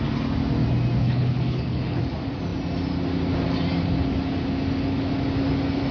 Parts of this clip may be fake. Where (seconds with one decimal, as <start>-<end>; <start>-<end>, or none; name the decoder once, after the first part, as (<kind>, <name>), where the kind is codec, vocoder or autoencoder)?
1.0-2.0 (codec, HILCodec)